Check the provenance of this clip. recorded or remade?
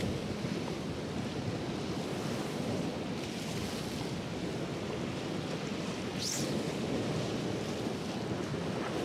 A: recorded